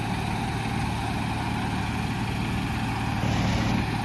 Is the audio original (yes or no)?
yes